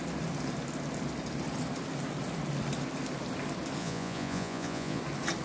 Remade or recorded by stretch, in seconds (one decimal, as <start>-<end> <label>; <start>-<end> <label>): 0.0-3.8 recorded; 3.8-5.0 remade; 5.0-5.4 recorded